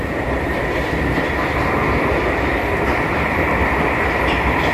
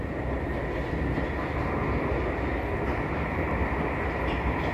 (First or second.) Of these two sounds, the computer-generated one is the first